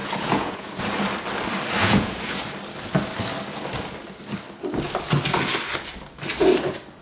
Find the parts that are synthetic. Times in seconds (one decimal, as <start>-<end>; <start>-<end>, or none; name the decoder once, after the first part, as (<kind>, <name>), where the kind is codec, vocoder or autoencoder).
0.0-0.8 (vocoder, Vocos); 1.8-2.4